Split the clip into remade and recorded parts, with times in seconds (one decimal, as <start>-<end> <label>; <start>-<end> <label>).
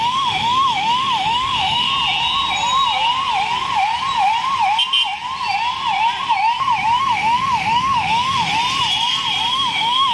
0.0-1.9 remade; 1.9-7.0 recorded; 7.0-8.5 remade; 8.5-9.5 recorded; 9.5-10.1 remade